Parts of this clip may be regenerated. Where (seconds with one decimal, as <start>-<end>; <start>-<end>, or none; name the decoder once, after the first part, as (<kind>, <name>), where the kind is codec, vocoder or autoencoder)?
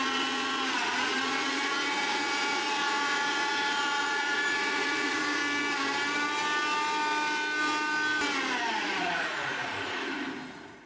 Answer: 0.0-5.4 (vocoder, Vocos); 8.7-10.9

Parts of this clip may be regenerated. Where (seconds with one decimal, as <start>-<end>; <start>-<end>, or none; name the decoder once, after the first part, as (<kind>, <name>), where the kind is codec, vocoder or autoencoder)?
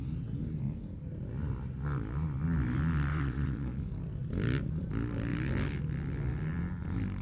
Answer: 3.1-3.8 (vocoder, Vocos)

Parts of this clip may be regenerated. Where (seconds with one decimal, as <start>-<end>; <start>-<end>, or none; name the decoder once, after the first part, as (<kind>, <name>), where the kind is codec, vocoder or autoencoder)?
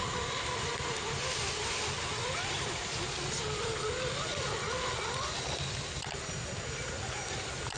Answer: none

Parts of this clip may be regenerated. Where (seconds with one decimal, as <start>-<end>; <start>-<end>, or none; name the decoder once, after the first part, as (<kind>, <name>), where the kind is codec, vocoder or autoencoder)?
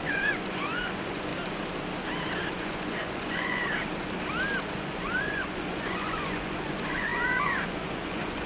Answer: 0.0-1.3 (vocoder, Vocos); 2.5-3.6; 4.6-8.5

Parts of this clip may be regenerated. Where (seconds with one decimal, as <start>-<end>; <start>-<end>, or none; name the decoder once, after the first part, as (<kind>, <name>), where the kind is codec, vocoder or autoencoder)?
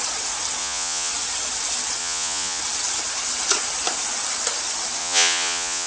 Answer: 0.6-1.1 (vocoder, Vocos); 2.0-2.6; 5.0-5.9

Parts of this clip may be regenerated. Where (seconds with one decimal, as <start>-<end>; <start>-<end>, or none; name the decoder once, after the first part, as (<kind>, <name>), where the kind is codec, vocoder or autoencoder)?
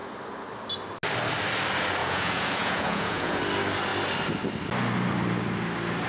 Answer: 2.0-3.4 (vocoder, Vocos)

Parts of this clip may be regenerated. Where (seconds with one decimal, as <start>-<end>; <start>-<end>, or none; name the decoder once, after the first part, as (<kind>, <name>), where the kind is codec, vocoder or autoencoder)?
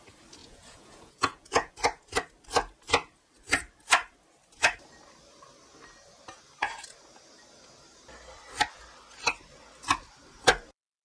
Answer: 0.4-1.7 (vocoder, Vocos)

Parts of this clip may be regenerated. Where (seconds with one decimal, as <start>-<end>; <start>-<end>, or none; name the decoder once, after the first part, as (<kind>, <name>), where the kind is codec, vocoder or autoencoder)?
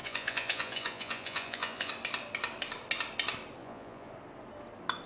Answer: 0.0-1.9 (vocoder, Vocos); 3.6-4.1